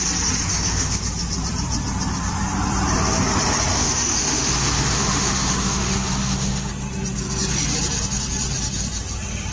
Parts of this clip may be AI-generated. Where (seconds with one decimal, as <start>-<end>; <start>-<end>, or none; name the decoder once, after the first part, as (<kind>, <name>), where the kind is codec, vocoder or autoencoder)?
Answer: 0.5-1.0 (autoencoder, DAC-VAE); 3.7-6.7